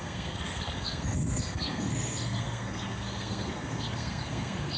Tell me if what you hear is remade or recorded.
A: remade